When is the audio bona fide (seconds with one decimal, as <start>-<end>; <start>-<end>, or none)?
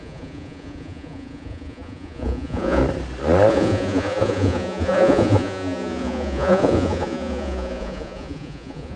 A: 2.8-3.5